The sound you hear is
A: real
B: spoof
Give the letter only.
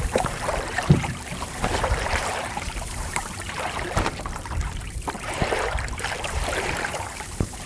B